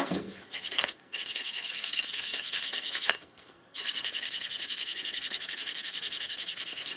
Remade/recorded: remade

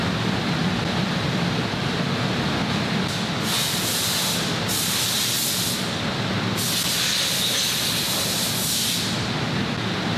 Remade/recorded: recorded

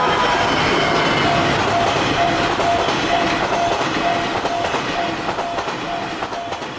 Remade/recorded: recorded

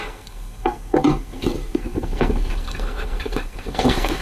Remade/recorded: remade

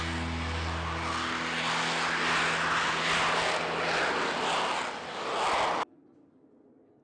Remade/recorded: recorded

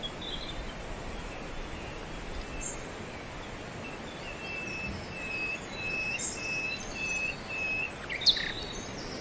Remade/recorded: recorded